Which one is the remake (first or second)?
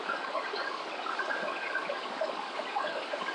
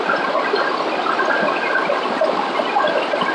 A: first